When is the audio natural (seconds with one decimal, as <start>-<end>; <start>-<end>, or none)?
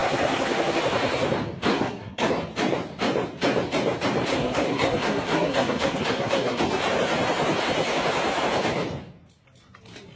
0.8-1.7; 2.3-4.3; 6.6-10.2